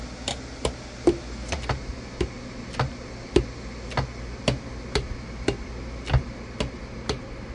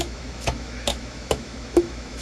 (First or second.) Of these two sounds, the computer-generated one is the second